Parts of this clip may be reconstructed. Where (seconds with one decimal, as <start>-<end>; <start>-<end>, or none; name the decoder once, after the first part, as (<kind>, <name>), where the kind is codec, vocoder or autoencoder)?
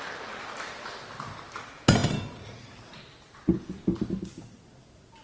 none